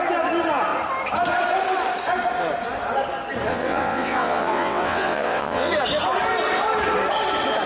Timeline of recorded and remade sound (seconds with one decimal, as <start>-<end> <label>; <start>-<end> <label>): 0.0-3.5 recorded; 3.5-5.7 remade; 5.7-7.7 recorded